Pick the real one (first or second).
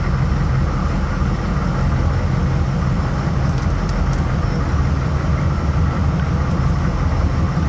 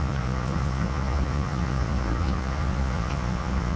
first